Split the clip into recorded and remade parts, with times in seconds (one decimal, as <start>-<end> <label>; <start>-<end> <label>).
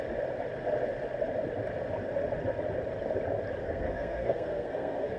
0.0-3.6 recorded; 3.6-5.2 remade